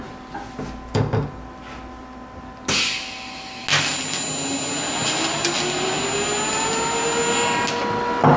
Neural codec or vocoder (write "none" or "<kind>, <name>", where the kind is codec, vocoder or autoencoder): none